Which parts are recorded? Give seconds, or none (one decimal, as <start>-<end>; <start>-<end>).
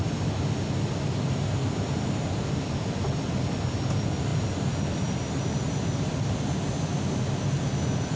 0.0-8.2